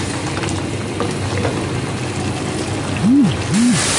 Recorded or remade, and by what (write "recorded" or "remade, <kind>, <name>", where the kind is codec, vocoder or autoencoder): recorded